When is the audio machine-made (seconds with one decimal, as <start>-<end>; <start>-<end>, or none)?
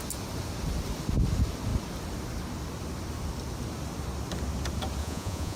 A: 5.0-5.6